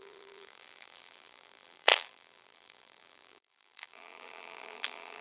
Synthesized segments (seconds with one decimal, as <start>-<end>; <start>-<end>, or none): 0.0-5.2